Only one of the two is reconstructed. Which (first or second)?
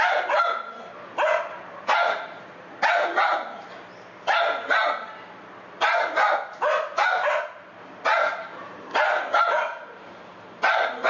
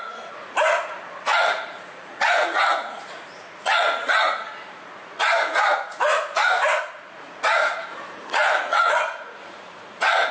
second